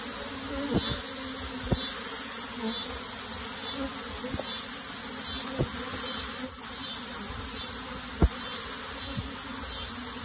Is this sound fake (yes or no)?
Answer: no